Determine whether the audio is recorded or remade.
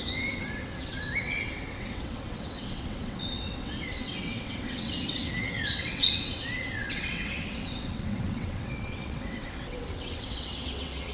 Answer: remade